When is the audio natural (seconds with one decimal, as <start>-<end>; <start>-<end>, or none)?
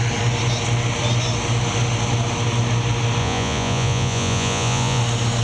0.0-3.2; 5.0-5.4